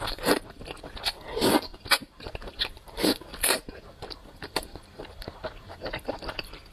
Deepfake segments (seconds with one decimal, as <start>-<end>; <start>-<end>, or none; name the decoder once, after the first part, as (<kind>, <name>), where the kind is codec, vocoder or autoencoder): 1.7-4.8 (vocoder, BigVGAN v2)